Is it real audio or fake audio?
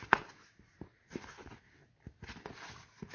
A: real